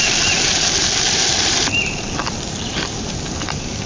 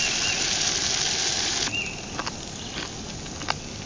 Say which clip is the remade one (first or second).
first